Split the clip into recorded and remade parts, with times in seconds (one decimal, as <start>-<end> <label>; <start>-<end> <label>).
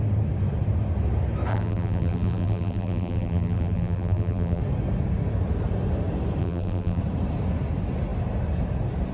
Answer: 0.0-1.5 recorded; 1.5-4.6 remade; 4.6-6.4 recorded; 6.4-7.0 remade; 7.0-9.1 recorded